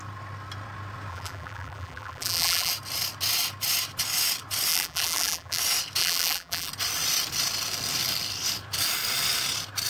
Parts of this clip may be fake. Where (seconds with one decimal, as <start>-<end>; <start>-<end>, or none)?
1.1-2.7; 4.7-5.6; 6.0-6.7